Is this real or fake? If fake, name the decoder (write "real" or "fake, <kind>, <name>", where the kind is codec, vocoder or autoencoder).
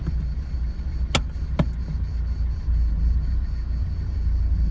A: real